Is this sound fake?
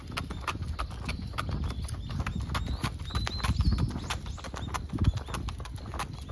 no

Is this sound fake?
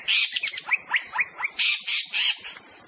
no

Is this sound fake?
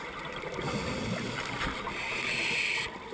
no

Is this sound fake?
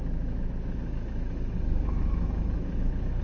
yes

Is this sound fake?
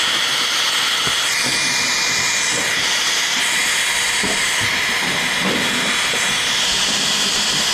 no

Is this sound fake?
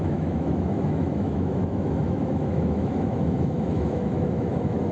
yes